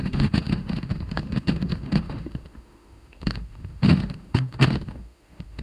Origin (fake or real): fake